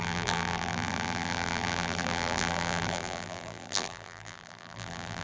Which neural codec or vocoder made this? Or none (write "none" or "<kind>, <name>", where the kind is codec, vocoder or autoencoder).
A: vocoder, BigVGAN v2